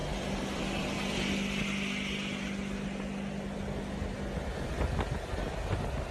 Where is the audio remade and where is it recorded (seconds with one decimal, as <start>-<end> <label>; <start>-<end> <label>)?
0.0-6.1 recorded